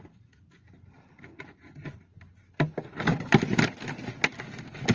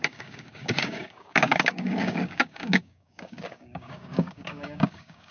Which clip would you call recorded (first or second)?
first